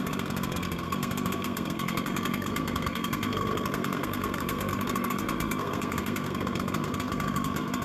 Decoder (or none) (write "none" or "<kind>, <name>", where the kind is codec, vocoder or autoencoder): codec, SNAC